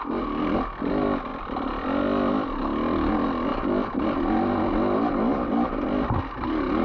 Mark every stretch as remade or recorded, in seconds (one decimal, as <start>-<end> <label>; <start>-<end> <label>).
0.0-6.8 recorded